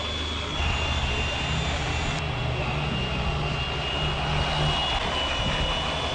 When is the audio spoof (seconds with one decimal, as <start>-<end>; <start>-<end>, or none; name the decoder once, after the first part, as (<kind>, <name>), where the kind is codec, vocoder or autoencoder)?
none